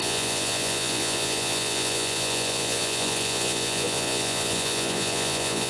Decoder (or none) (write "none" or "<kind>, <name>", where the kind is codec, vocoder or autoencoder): vocoder, Vocos